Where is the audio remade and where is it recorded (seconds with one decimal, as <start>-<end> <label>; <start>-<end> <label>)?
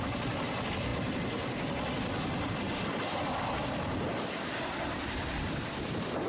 0.0-6.3 recorded